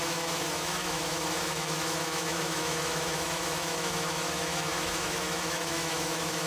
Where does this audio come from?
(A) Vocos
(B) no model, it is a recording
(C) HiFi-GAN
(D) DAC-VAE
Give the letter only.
D